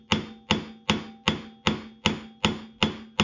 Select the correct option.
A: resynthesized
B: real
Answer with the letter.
B